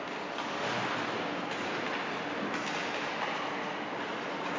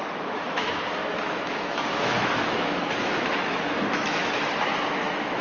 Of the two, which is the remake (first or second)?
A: second